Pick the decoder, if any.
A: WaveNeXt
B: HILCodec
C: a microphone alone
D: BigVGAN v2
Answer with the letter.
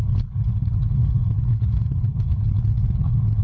B